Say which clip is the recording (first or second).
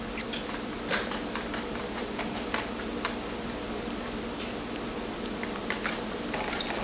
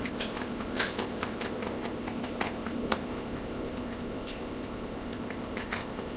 first